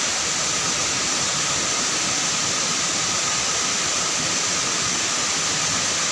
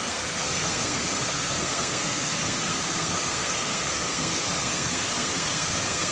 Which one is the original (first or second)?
first